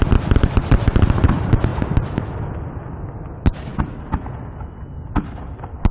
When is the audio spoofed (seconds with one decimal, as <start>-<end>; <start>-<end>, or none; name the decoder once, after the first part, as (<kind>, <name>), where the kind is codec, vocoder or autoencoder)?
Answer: none